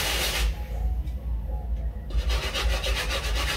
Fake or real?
real